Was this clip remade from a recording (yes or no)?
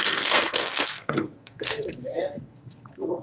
yes